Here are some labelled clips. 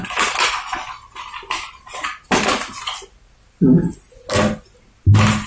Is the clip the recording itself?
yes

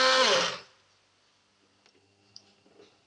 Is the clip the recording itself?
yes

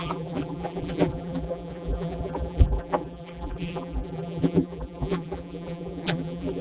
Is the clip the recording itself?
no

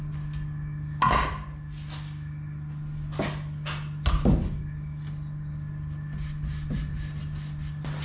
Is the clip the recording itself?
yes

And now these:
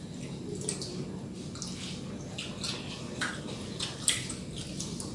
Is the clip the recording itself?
yes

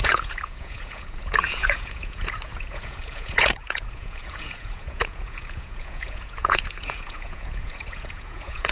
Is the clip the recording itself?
no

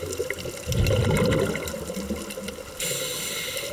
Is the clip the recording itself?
yes